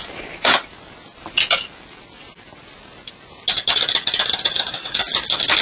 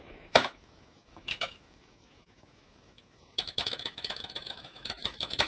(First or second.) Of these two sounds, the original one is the first